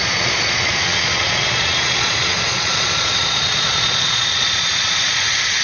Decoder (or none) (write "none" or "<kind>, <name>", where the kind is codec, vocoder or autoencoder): vocoder, Vocos